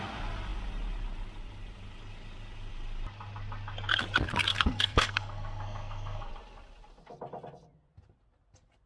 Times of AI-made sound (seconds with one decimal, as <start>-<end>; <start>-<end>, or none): 4.5-6.3